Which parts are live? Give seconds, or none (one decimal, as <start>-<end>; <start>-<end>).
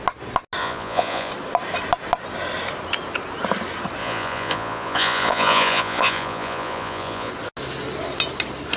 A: 0.0-0.6; 1.3-4.0; 7.3-8.8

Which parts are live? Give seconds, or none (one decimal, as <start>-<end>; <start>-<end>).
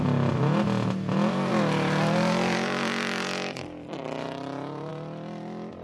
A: 0.0-5.8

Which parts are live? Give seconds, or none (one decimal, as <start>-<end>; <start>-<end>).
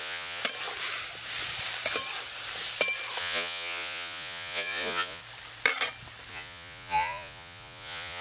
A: 0.4-3.2; 5.2-6.3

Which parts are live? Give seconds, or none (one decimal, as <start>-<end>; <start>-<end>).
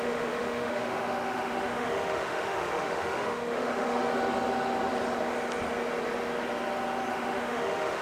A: 4.0-7.1